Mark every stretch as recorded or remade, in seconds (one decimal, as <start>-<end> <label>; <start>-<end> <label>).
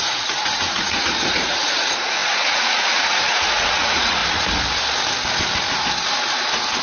0.0-4.2 remade; 4.2-6.8 recorded